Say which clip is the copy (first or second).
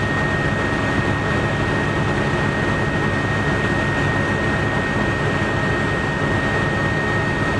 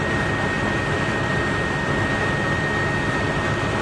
second